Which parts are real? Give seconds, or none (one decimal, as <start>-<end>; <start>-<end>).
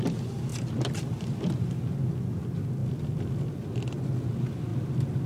0.0-5.3